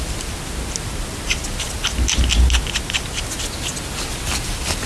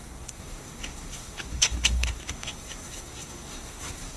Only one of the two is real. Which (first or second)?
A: first